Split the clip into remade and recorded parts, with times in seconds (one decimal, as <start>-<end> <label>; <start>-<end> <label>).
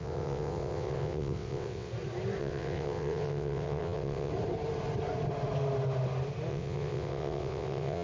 0.0-1.9 remade; 1.9-2.4 recorded; 2.4-4.3 remade; 4.3-6.5 recorded; 6.5-8.0 remade